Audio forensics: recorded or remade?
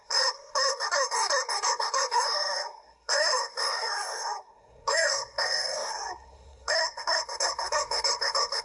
remade